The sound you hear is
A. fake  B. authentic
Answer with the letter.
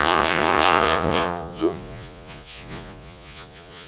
A